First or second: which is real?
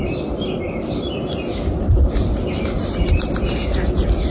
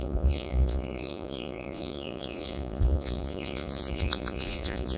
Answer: first